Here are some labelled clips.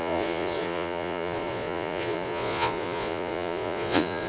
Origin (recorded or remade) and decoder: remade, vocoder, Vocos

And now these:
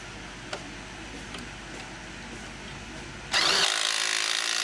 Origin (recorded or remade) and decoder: recorded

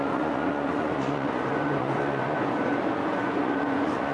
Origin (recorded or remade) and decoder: remade, vocoder, Vocos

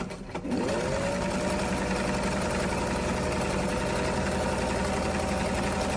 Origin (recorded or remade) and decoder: recorded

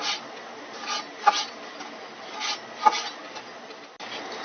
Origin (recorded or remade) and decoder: recorded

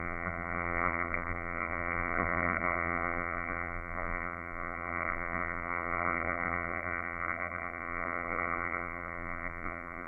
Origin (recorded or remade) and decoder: remade, vocoder, BigVGAN v2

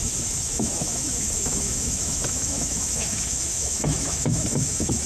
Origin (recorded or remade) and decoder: remade, autoencoder, DAC-VAE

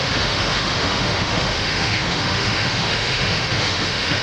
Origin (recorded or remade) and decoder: remade, autoencoder, DAC-VAE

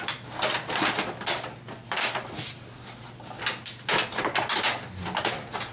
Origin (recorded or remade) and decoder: recorded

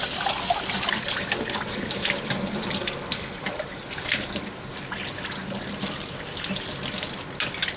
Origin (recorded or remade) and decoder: recorded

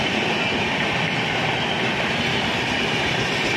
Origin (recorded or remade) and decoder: remade, vocoder, BigVGAN v2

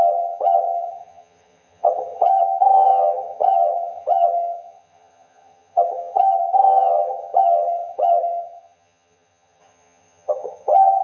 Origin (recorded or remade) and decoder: remade, vocoder, HiFi-GAN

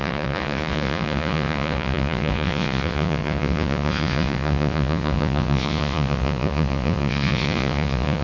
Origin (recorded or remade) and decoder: remade, vocoder, Vocos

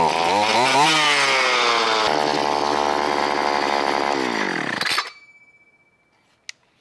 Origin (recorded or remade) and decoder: recorded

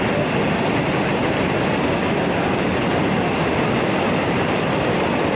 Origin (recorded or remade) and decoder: remade, vocoder, BigVGAN v2